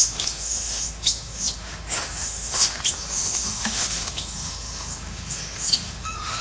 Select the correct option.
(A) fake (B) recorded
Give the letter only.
A